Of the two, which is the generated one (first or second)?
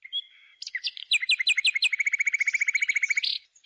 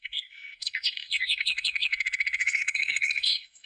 second